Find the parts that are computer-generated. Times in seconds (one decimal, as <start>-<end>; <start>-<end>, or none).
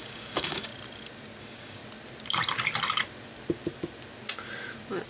0.0-0.7; 1.4-1.8